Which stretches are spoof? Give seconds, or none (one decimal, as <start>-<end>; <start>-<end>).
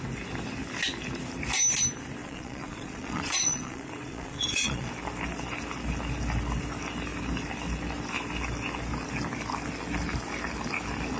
2.2-4.9